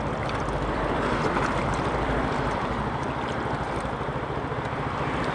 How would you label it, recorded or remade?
remade